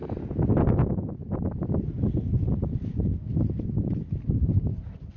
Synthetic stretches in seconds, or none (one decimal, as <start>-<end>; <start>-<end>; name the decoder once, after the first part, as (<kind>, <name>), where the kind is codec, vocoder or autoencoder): none

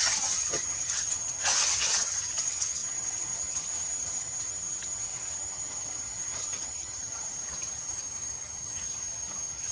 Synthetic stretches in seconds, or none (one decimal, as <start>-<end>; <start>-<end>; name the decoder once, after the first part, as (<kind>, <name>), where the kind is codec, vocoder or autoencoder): 0.0-9.7 (vocoder, HiFi-GAN)